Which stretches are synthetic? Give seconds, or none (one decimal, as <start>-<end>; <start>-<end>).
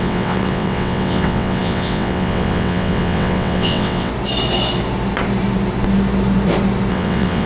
0.0-4.1; 6.9-7.5